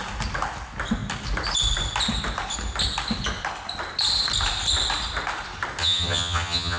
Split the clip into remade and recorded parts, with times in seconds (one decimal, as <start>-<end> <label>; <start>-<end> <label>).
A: 0.0-5.8 recorded; 5.8-6.8 remade